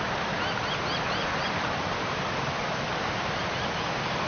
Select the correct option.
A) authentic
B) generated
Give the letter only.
B